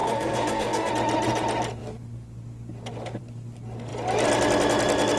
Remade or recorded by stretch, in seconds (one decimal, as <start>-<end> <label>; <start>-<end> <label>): 0.0-0.9 remade; 0.9-5.2 recorded